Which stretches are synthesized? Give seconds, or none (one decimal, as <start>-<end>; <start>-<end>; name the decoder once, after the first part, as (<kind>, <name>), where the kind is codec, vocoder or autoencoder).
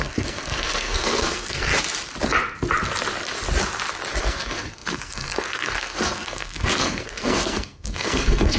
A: 0.0-1.7 (codec, SNAC); 4.2-8.6